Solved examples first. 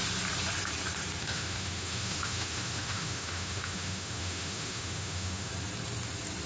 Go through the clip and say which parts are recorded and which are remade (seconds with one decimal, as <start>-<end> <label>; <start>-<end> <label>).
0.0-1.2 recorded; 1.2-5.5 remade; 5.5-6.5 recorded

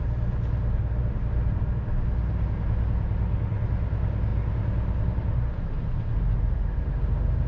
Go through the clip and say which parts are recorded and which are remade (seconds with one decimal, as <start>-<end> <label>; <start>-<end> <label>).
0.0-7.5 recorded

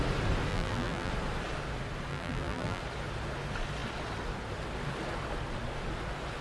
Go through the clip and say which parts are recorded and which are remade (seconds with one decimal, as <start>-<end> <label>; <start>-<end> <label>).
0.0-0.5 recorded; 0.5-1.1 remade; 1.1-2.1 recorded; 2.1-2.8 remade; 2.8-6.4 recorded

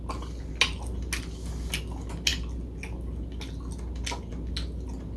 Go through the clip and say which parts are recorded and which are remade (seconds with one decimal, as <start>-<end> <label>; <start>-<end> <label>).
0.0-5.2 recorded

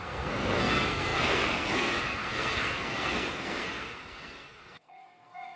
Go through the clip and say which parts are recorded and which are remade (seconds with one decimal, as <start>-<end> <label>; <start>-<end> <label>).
0.0-5.6 remade

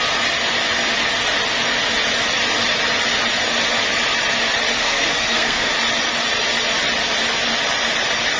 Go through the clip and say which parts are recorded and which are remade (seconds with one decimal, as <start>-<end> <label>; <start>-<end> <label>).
0.0-4.8 recorded; 4.8-5.7 remade; 5.7-8.4 recorded

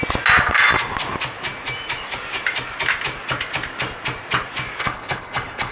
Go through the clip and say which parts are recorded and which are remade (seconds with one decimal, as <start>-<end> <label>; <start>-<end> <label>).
0.0-4.8 recorded; 4.8-5.7 remade